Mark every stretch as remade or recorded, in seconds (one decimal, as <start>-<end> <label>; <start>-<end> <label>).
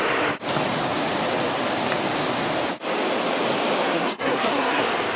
0.0-3.8 recorded; 3.8-4.8 remade; 4.8-5.2 recorded